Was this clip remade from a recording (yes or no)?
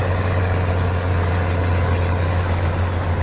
no